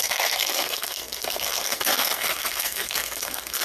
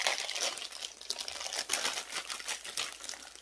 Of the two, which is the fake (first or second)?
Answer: first